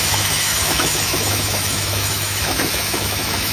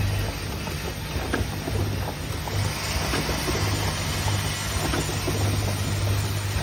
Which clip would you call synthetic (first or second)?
first